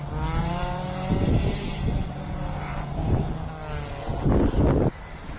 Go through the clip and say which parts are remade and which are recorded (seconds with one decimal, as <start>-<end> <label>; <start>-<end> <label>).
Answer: 0.0-0.4 recorded; 0.4-3.2 remade; 3.2-5.4 recorded